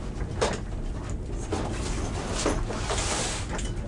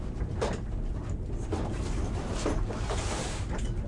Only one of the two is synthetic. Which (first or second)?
second